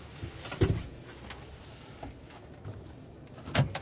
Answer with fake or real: real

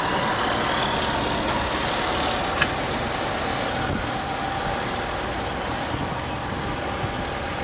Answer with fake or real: real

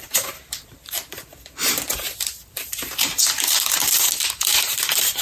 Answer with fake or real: fake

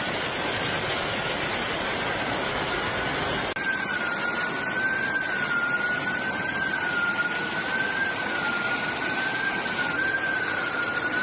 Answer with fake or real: real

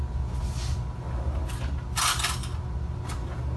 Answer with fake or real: real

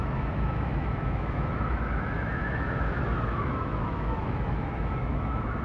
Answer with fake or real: fake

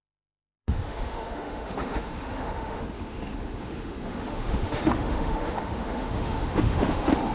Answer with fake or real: fake